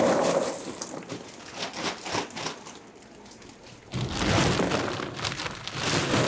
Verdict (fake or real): real